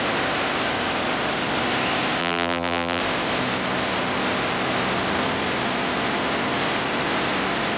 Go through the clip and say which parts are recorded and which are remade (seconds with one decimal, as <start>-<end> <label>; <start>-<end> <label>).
0.0-2.2 recorded; 2.2-3.0 remade; 3.0-7.8 recorded